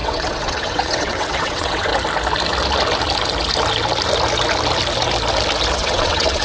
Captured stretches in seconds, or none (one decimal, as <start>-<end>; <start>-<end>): 1.9-5.7